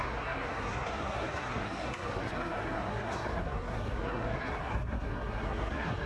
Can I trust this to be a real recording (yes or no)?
no